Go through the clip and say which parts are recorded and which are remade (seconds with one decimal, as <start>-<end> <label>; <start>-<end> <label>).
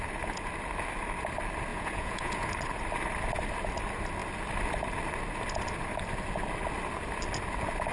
0.0-1.7 recorded; 1.7-2.5 remade; 2.5-7.9 recorded